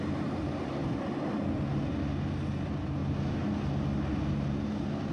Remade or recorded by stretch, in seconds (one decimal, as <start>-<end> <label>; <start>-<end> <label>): 0.0-5.1 recorded